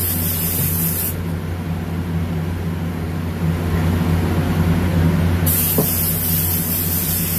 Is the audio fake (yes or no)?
no